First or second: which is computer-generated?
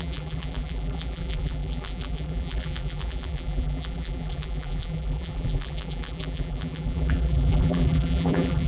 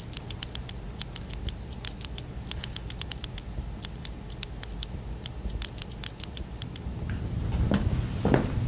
first